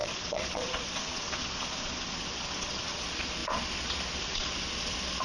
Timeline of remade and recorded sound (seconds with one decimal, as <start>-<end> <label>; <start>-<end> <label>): 0.0-5.2 remade